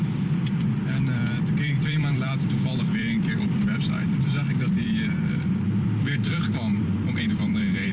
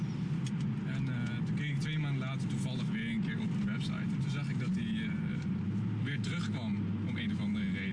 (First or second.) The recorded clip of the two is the second